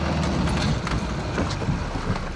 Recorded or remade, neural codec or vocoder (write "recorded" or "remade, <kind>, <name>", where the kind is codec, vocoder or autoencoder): recorded